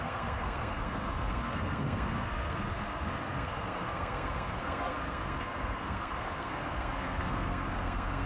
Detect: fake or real fake